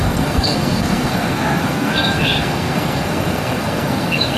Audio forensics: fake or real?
fake